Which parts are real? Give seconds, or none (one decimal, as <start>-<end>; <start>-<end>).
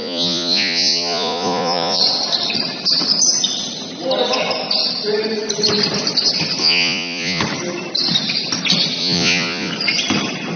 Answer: 2.0-6.6; 7.4-9.0; 9.7-10.6